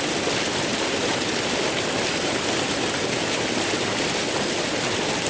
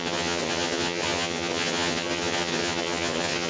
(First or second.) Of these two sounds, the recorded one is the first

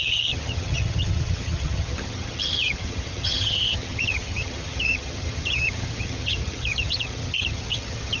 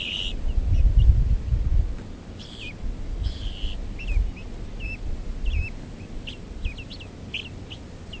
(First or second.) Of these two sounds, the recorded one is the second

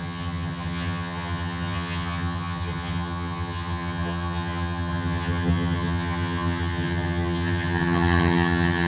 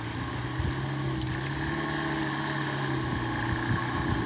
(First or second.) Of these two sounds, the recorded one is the second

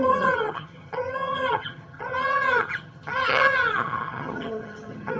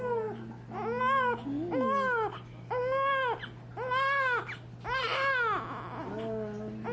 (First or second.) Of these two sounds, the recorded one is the second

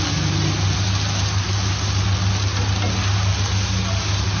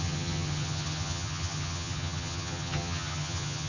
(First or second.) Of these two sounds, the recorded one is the first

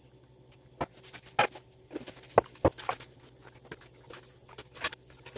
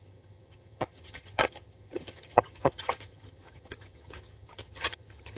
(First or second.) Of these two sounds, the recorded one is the first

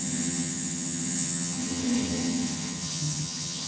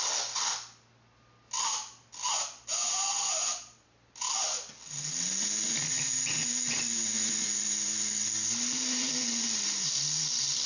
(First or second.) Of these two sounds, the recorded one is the second